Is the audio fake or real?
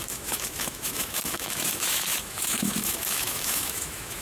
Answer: fake